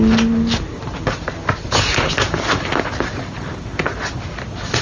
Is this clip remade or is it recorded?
recorded